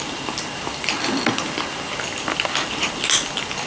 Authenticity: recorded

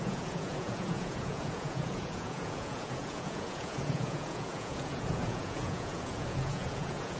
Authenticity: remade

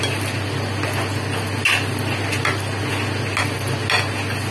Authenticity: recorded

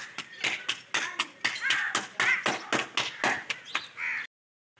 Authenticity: recorded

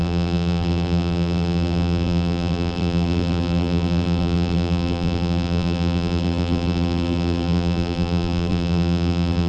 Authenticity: remade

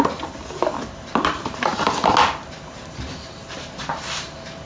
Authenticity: recorded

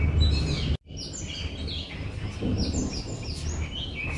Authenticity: recorded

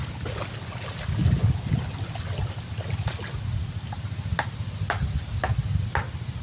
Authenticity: recorded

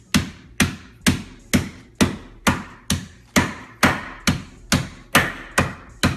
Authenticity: recorded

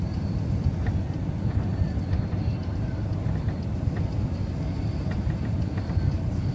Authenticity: recorded